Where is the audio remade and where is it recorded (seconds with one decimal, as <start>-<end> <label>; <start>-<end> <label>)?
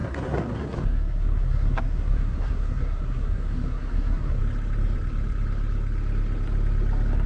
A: 0.0-4.4 remade; 4.4-7.3 recorded